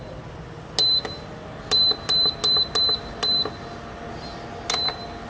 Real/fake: real